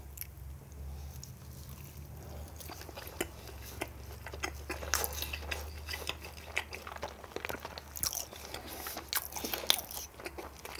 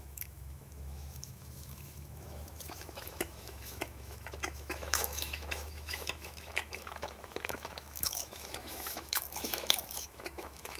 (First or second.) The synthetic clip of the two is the second